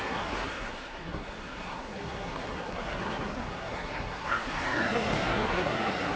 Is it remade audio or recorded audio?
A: remade